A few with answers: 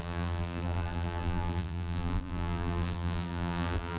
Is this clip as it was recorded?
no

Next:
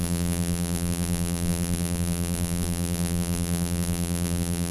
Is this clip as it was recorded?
no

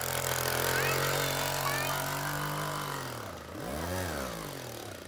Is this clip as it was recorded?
yes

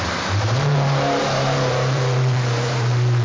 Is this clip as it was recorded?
no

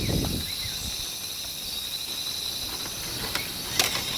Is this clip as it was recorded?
no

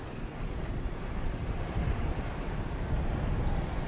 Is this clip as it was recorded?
no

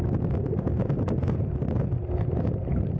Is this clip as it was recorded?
yes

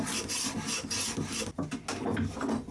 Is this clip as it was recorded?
yes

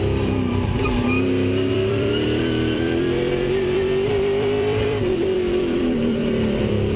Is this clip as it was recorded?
no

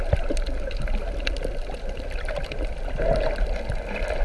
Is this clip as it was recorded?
yes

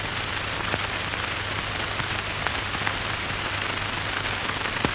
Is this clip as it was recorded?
yes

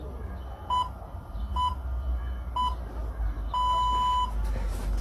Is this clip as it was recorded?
yes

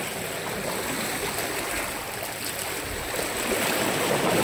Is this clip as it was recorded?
yes